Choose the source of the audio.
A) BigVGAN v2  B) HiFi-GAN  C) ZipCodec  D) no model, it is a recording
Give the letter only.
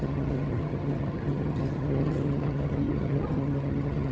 B